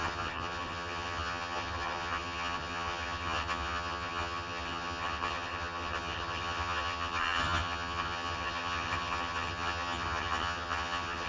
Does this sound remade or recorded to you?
remade